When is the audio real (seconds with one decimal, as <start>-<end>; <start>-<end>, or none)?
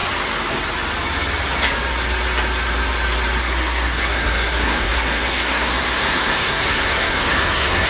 0.0-3.4